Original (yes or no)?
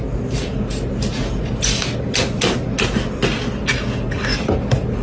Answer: yes